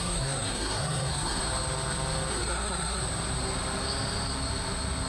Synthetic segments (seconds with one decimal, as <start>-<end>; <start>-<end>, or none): 0.0-1.4; 2.3-3.0